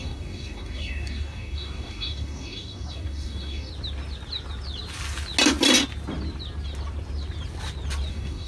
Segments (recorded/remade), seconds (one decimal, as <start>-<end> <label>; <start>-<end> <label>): 0.0-3.7 remade; 3.7-8.1 recorded; 8.1-8.5 remade